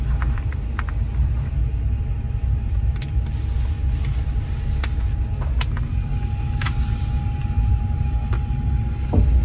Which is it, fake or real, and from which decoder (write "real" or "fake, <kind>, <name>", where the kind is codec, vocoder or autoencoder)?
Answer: real